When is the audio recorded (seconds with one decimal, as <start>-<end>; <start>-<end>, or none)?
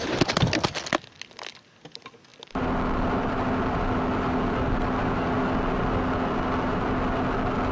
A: 0.0-7.7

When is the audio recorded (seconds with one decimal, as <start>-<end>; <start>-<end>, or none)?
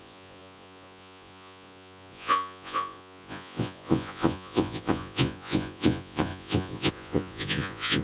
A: none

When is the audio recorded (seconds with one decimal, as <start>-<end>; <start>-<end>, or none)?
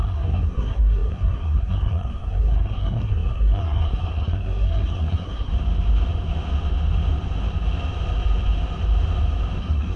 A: 5.5-9.6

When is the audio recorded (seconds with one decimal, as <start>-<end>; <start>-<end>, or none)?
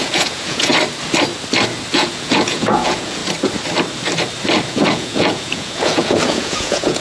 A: 0.7-1.9; 3.2-4.7